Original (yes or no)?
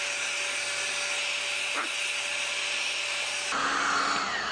yes